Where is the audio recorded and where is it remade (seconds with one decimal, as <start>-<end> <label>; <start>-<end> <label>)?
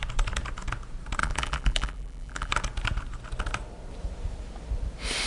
0.0-1.2 recorded; 1.2-2.5 remade; 2.5-5.3 recorded